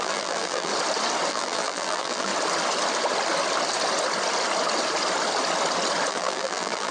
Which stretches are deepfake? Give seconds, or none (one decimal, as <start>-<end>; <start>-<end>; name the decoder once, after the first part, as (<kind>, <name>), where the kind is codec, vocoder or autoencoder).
0.0-0.7 (vocoder, BigVGAN v2); 1.3-2.3; 6.1-6.9

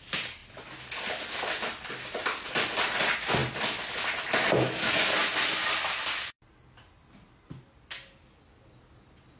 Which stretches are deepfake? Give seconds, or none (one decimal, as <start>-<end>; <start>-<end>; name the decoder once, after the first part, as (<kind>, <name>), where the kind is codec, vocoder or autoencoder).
none

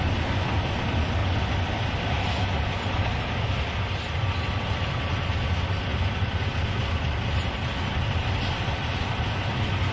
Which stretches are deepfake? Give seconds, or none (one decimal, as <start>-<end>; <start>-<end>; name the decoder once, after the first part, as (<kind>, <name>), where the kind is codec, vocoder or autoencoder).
none

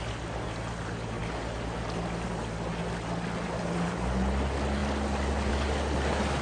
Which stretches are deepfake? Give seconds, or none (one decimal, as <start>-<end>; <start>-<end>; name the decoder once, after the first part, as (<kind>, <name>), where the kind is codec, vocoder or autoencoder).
none

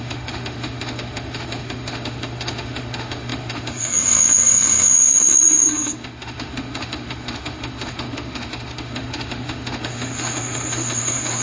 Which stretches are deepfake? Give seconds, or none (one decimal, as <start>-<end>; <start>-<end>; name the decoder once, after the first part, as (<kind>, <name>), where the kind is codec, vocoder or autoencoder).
0.0-11.4 (autoencoder, DAC-VAE)

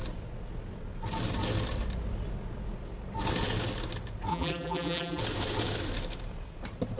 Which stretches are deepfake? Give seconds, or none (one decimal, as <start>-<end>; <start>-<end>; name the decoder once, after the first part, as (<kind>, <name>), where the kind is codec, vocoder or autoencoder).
4.3-5.2 (vocoder, BigVGAN v2)

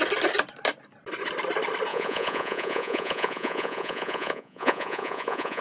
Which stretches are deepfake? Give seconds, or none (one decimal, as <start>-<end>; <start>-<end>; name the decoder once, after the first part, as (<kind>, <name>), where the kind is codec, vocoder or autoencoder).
1.9-5.6 (vocoder, Vocos)

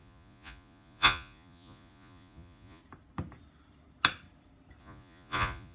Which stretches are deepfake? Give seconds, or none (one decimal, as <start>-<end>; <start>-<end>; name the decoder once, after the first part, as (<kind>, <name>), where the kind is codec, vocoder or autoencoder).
0.0-2.8 (vocoder, Vocos); 4.8-5.7